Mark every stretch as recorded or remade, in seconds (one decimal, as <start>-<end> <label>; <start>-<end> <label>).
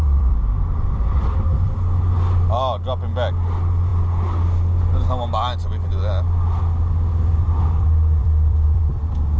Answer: 0.0-1.7 remade; 1.7-8.2 recorded; 8.2-8.8 remade; 8.8-9.4 recorded